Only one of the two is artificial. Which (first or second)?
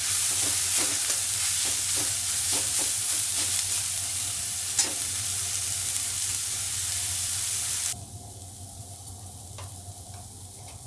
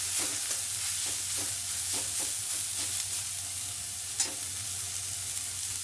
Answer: first